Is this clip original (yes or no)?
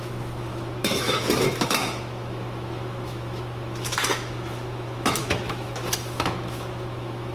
no